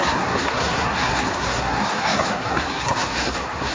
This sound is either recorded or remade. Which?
remade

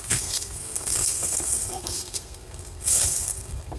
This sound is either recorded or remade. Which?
remade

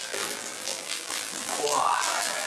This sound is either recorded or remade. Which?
remade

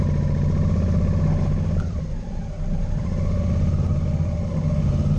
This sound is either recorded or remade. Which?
recorded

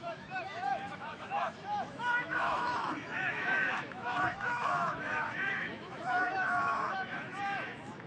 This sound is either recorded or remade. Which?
remade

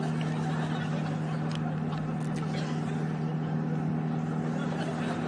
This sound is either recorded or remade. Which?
recorded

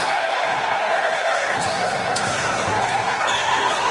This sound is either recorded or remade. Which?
remade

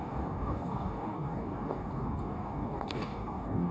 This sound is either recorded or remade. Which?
remade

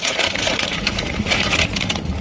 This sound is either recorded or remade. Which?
remade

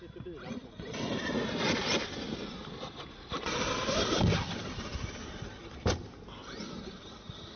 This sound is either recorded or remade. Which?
recorded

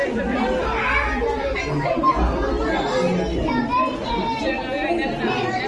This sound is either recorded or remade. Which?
recorded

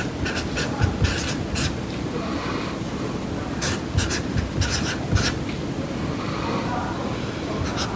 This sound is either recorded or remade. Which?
recorded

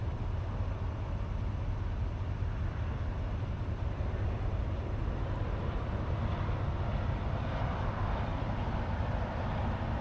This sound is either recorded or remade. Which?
recorded